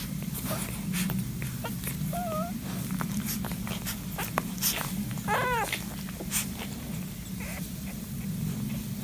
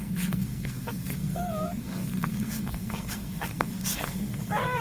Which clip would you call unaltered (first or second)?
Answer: first